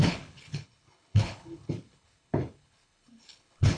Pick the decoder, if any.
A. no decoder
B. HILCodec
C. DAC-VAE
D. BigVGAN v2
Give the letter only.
B